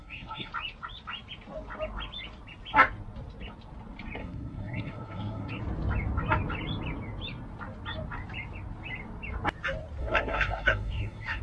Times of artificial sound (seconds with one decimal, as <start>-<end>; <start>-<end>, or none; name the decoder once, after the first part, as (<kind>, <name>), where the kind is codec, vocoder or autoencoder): 0.0-0.5 (codec, SNAC); 4.2-5.6; 10.0-11.4